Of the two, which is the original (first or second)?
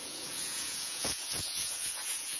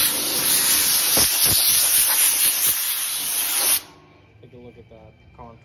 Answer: second